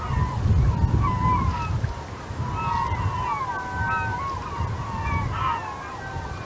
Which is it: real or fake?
real